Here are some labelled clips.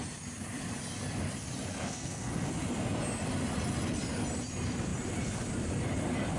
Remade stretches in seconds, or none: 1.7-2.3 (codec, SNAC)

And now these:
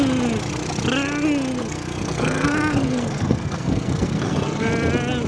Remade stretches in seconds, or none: 1.6-4.7 (codec, SNAC)

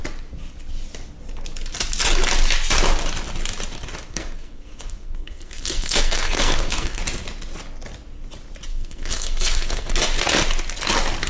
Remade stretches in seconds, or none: 4.1-7.0 (codec, SNAC); 8.7-9.9

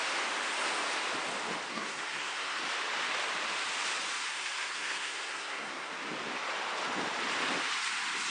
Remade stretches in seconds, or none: 1.7-2.6 (codec, SNAC); 4.3-5.9

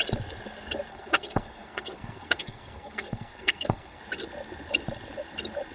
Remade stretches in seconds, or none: 0.9-4.0 (codec, SNAC)